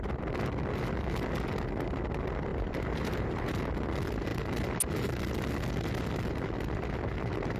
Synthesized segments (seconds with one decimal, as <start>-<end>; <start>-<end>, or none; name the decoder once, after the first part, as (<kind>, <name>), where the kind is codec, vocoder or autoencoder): 2.5-3.5 (vocoder, BigVGAN v2)